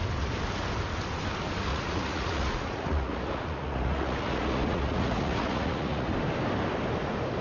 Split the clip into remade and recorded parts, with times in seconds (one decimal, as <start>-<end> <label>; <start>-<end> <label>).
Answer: 0.0-1.7 recorded; 1.7-6.1 remade; 6.1-7.4 recorded